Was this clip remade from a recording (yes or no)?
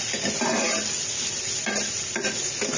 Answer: no